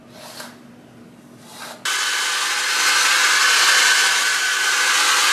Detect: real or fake real